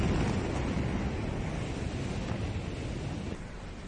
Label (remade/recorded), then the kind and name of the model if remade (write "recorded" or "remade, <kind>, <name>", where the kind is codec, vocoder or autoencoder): recorded